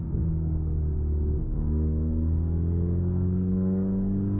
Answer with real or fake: fake